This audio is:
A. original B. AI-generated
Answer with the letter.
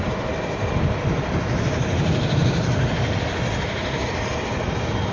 A